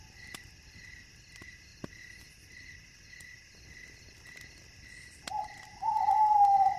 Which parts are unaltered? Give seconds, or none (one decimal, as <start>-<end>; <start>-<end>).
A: 0.0-6.8